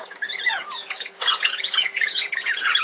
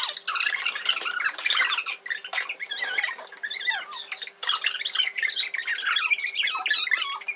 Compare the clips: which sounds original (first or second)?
second